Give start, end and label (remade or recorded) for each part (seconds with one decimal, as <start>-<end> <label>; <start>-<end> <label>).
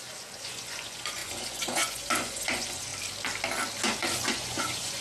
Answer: 0.0-2.9 remade; 2.9-4.0 recorded; 4.0-5.0 remade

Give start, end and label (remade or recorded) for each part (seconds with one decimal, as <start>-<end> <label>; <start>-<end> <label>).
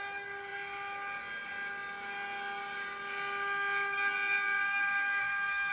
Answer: 0.0-5.0 recorded; 5.0-5.7 remade